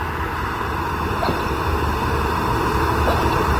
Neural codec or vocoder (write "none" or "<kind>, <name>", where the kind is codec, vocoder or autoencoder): none